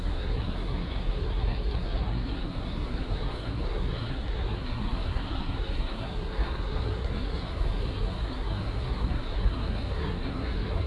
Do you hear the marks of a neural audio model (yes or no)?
yes